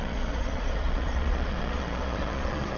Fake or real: fake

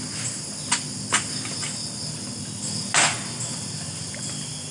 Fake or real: real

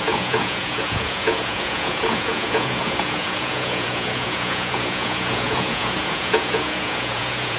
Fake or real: fake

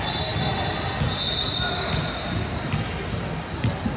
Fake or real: real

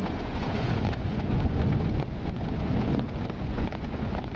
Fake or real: fake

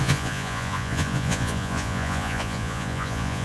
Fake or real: fake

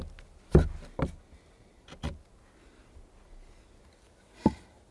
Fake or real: real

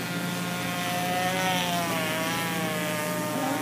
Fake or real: real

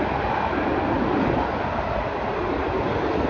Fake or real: real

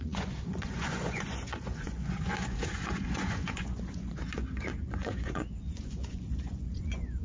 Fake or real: fake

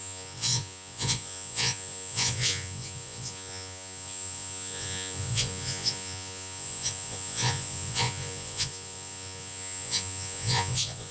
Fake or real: fake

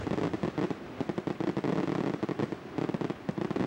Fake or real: real